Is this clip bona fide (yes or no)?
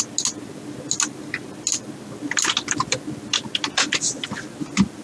yes